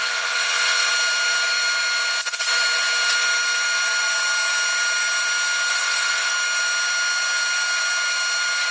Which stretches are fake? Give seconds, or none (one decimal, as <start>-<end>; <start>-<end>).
0.0-0.9; 5.7-6.3